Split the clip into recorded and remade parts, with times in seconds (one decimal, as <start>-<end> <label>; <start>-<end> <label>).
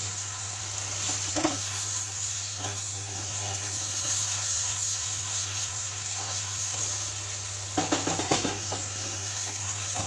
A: 0.0-0.6 remade; 0.6-1.3 recorded; 1.3-6.8 remade; 6.8-8.2 recorded; 8.2-10.1 remade